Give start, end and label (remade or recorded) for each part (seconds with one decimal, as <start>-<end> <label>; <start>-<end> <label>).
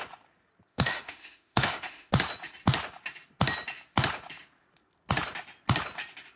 0.0-0.7 recorded; 0.7-2.1 remade; 2.1-6.4 recorded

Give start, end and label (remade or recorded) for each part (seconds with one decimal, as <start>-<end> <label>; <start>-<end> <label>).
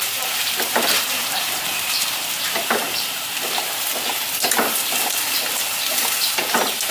0.0-3.9 remade; 3.9-6.0 recorded; 6.0-6.9 remade